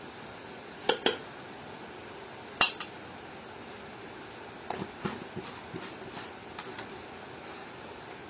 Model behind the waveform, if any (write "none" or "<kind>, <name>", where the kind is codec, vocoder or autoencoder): none